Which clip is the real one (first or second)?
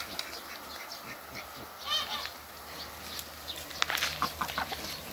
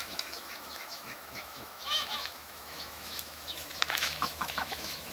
first